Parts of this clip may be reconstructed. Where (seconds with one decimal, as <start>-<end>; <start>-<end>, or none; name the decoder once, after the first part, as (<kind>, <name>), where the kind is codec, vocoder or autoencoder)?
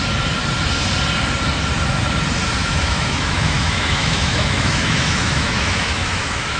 2.6-6.6 (autoencoder, DAC-VAE)